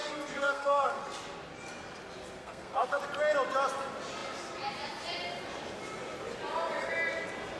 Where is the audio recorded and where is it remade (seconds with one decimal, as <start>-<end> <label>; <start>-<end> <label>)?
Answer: 0.0-1.0 remade; 1.0-2.4 recorded; 2.4-3.0 remade; 3.0-7.6 recorded